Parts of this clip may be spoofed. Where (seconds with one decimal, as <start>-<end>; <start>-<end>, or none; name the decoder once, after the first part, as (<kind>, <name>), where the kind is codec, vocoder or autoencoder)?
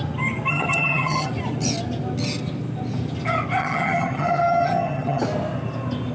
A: 0.5-1.3 (vocoder, HiFi-GAN); 3.6-5.2